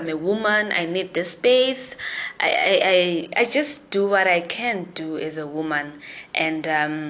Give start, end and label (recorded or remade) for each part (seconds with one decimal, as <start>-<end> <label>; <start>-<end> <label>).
0.0-7.1 recorded